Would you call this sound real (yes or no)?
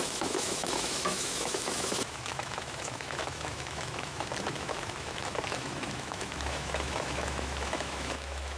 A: no